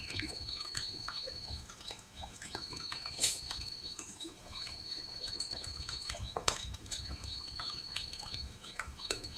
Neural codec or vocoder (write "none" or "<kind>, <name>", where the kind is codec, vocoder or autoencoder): autoencoder, DAC-VAE